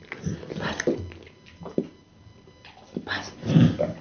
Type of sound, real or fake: real